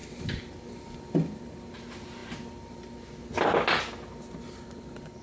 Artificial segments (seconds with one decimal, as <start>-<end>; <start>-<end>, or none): none